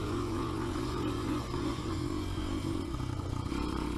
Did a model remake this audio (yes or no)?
yes